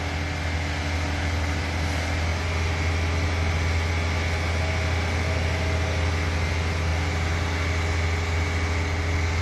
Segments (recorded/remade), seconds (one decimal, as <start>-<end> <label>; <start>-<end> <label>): 0.0-9.4 recorded